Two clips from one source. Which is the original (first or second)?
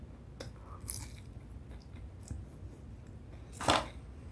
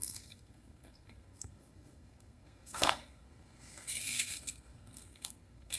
first